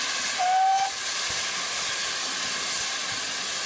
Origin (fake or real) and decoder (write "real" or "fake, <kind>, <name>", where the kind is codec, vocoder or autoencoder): real